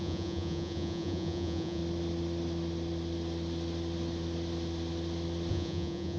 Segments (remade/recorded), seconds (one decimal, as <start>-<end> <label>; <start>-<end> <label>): 0.0-1.8 remade; 1.8-5.5 recorded; 5.5-6.2 remade